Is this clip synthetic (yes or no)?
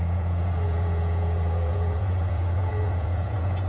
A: yes